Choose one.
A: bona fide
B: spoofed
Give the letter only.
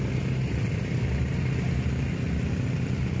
A